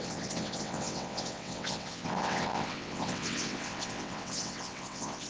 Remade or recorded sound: remade